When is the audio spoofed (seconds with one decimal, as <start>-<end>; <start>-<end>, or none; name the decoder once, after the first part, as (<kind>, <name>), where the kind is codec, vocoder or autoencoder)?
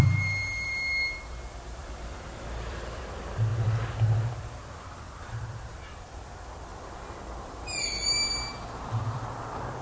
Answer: 0.0-0.9 (vocoder, BigVGAN v2); 1.8-3.5; 4.3-6.7; 9.0-9.8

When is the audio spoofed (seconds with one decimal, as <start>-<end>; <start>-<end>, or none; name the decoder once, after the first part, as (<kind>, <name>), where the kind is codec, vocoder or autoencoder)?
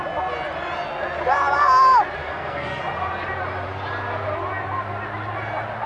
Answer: 2.2-2.8 (codec, SNAC)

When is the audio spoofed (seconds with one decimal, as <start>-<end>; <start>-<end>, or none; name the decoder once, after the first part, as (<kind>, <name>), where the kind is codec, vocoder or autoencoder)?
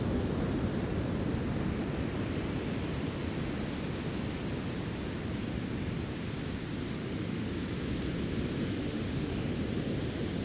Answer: 7.0-7.5 (autoencoder, DAC-VAE); 8.8-9.6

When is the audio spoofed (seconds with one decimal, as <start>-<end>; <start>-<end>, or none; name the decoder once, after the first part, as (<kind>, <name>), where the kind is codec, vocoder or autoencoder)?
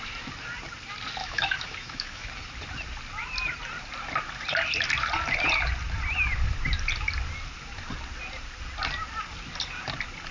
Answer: 1.2-2.3 (autoencoder, DAC-VAE)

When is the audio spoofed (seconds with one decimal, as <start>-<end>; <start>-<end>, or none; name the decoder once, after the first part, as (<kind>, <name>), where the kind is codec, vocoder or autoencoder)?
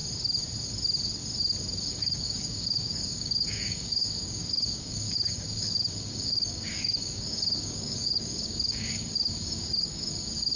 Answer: 1.9-10.6 (codec, DAC)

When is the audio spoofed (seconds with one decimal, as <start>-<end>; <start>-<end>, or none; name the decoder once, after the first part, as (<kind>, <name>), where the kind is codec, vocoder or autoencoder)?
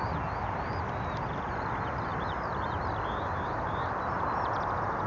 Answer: none